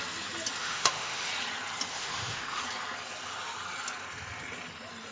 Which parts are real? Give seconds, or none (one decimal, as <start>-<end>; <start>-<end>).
0.0-0.6; 1.3-1.9; 2.6-5.1